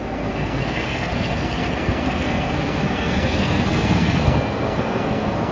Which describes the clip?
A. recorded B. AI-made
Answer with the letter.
B